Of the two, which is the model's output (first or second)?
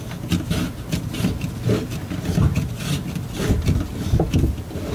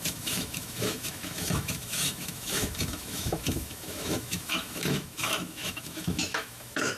second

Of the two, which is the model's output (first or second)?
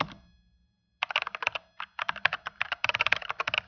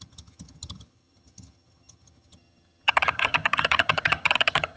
second